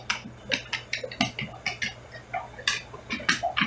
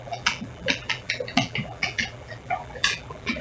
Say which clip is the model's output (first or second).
second